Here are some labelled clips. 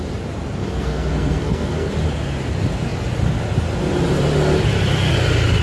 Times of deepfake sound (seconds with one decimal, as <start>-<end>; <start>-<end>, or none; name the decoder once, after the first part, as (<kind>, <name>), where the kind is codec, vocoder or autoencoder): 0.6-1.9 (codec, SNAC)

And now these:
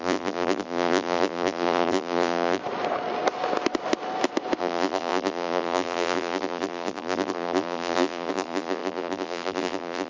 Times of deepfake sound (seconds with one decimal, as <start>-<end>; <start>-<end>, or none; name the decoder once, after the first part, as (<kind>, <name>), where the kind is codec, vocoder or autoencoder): 0.0-2.6 (vocoder, BigVGAN v2); 4.6-10.1

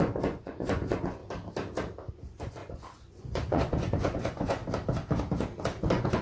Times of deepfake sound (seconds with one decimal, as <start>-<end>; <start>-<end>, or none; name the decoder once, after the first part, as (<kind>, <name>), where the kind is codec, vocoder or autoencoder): 0.0-1.2 (vocoder, Vocos); 2.1-4.6; 5.8-6.2

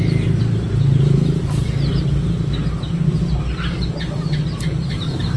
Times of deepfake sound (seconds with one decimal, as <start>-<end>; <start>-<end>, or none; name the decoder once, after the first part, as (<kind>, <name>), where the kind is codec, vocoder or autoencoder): 0.0-1.6 (vocoder, BigVGAN v2); 4.8-5.4

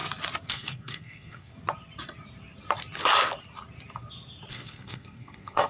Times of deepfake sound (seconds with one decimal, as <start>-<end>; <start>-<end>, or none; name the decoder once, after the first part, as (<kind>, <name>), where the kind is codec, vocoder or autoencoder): 0.5-1.5 (codec, SNAC); 4.5-5.7

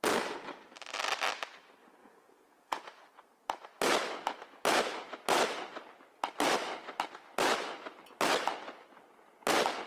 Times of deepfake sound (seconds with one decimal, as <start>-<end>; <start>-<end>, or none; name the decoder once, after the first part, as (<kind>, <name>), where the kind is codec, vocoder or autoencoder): 2.0-3.1 (vocoder, Vocos)

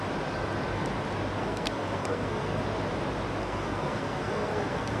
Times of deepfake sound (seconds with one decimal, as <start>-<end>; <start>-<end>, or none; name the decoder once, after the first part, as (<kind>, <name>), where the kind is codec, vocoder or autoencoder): 1.4-2.6 (codec, SNAC); 3.4-5.0

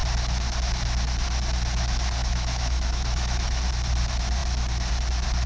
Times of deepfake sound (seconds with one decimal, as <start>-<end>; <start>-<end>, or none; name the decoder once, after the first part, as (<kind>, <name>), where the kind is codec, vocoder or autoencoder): 2.2-3.6 (autoencoder, DAC-VAE)